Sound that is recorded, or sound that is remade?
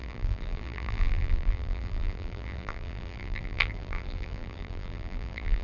remade